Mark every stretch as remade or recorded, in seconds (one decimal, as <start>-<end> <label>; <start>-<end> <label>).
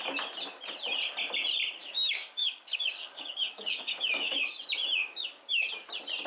0.0-1.8 recorded; 1.8-4.5 remade; 4.5-5.0 recorded; 5.0-5.7 remade; 5.7-6.3 recorded